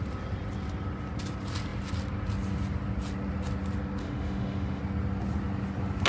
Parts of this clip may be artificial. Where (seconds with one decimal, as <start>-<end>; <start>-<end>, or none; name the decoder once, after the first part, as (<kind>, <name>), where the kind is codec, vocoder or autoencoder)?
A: 4.0-4.8 (autoencoder, DAC-VAE)